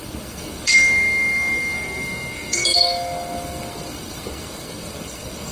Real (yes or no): no